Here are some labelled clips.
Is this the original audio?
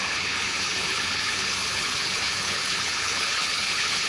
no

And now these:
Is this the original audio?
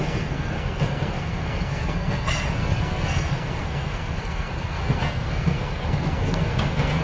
no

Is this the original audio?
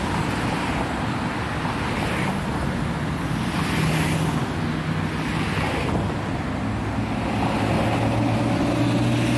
yes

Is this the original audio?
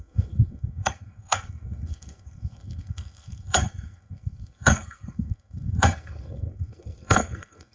no